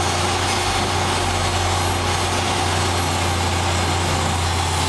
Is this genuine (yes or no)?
yes